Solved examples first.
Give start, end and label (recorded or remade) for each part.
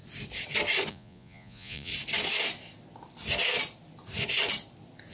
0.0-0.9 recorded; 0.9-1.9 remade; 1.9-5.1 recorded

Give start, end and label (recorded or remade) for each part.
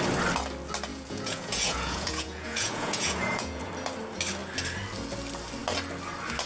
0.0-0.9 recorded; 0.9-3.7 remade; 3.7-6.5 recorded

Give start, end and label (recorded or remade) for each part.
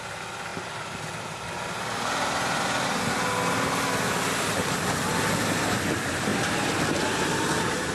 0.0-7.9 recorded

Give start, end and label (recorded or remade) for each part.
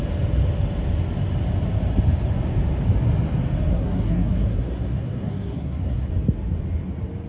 0.0-3.7 recorded; 3.7-6.1 remade; 6.1-7.3 recorded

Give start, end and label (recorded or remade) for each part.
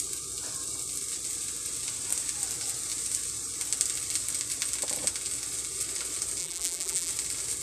0.0-6.4 recorded; 6.4-7.1 remade; 7.1-7.6 recorded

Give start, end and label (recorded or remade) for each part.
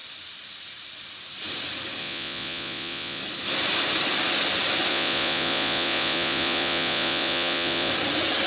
0.0-2.0 recorded; 2.0-3.2 remade; 3.2-4.9 recorded; 4.9-7.9 remade; 7.9-8.5 recorded